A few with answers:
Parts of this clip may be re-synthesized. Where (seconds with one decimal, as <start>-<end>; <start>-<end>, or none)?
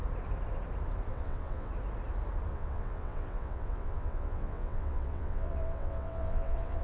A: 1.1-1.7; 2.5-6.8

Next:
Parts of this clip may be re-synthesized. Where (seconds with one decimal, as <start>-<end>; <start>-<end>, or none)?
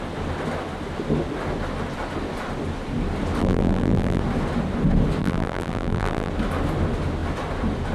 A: 3.4-4.2; 5.2-6.3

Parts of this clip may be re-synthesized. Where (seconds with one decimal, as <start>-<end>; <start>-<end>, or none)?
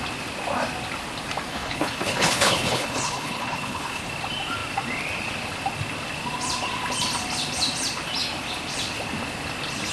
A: 1.5-4.1